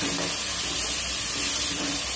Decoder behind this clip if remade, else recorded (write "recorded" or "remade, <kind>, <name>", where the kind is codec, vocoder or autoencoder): recorded